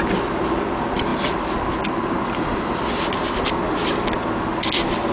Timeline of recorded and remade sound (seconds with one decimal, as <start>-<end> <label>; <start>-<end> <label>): 0.0-5.1 recorded